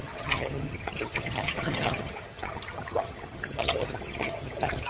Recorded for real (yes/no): no